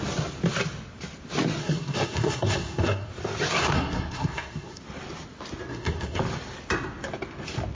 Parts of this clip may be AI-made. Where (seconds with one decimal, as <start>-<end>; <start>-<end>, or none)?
1.6-3.1; 3.6-4.8; 5.7-6.2